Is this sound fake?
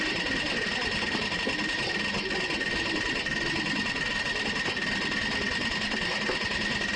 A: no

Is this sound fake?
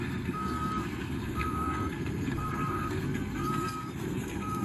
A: yes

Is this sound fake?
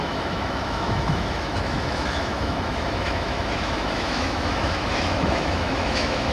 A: yes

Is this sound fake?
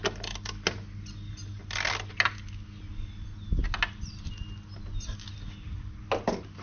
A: no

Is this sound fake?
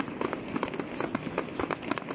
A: no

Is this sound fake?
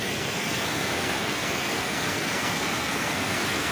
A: yes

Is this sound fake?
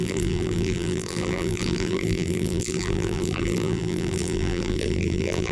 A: yes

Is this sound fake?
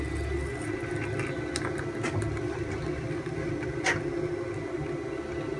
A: no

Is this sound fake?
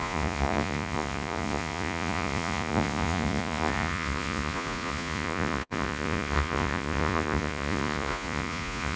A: yes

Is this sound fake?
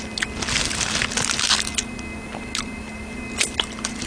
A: no